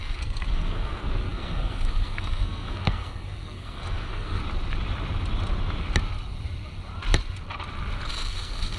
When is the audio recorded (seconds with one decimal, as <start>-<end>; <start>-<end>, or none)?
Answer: 4.4-8.1